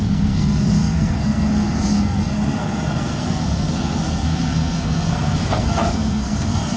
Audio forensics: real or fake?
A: fake